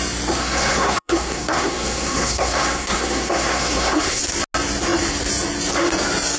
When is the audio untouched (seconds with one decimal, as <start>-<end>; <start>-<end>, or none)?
0.0-0.4; 4.2-6.4